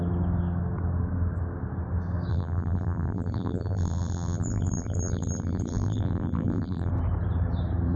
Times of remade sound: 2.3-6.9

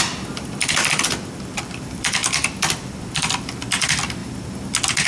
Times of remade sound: 0.0-4.2

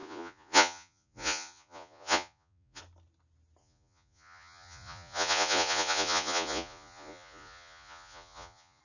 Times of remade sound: 0.0-2.8; 3.6-8.8

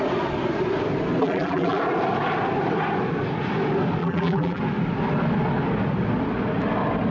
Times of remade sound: 1.2-1.8; 4.0-4.6

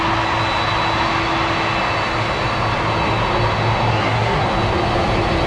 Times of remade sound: 3.9-4.4

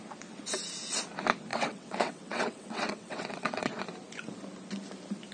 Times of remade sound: 1.5-3.8

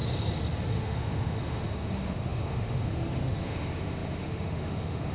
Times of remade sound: 0.7-5.1